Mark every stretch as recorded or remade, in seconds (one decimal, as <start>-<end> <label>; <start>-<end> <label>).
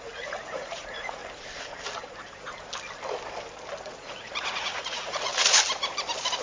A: 0.0-1.2 remade; 1.2-3.8 recorded; 3.8-5.3 remade; 5.3-6.4 recorded